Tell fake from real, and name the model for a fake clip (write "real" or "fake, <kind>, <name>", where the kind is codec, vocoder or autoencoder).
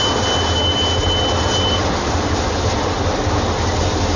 real